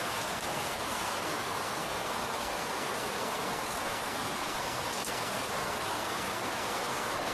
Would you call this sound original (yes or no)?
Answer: no